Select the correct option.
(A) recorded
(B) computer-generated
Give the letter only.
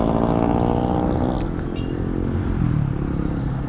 A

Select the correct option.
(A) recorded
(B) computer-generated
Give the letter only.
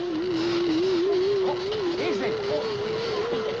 A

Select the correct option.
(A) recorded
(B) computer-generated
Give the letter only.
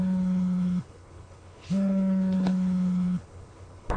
B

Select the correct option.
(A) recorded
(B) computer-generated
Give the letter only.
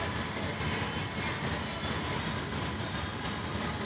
A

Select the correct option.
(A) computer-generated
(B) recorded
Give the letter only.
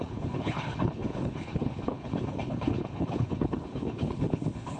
A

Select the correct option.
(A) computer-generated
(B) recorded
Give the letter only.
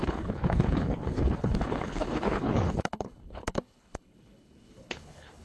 A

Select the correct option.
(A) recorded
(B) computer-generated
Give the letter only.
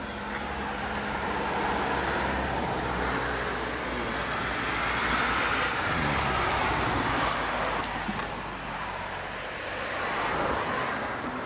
A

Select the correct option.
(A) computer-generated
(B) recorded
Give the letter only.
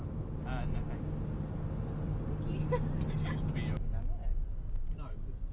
B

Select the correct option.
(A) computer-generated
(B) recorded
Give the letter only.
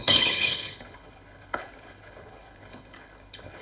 A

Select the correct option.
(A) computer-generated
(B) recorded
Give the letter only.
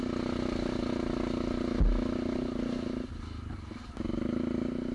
B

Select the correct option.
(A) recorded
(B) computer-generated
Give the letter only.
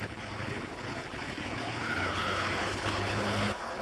B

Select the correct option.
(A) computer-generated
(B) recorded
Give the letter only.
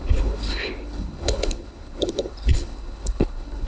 A